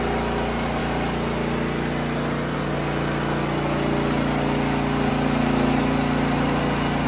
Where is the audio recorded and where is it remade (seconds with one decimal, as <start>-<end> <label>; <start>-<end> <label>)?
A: 0.0-7.1 recorded

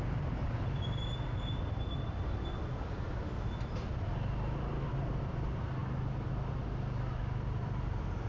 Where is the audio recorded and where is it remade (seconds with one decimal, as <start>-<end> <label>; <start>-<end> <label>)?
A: 0.0-8.3 recorded

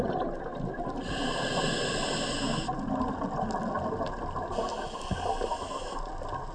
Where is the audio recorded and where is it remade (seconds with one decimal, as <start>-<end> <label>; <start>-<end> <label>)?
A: 0.0-5.5 recorded; 5.5-6.0 remade; 6.0-6.5 recorded

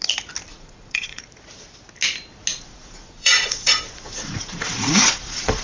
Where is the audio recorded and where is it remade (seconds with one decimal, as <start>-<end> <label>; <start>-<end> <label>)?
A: 0.0-0.5 recorded; 0.5-1.2 remade; 1.2-2.5 recorded; 2.5-5.6 remade

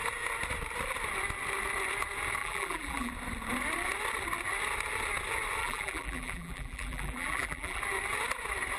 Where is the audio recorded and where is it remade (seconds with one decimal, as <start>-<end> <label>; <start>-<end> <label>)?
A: 0.0-2.4 recorded; 2.4-3.1 remade; 3.1-5.6 recorded; 5.6-7.8 remade; 7.8-8.8 recorded

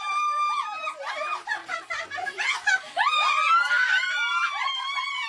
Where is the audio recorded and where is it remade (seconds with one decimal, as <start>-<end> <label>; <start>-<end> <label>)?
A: 0.0-5.3 recorded

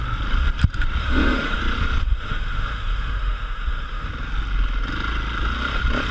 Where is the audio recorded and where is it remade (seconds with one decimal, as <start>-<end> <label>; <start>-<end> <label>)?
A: 0.0-1.0 recorded; 1.0-1.6 remade; 1.6-2.0 recorded; 2.0-4.1 remade; 4.1-6.1 recorded